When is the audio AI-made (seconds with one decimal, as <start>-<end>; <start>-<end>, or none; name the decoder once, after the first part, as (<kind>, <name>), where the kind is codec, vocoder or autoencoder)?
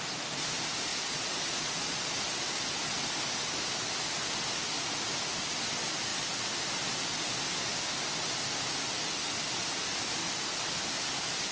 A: 0.9-2.0 (vocoder, Vocos)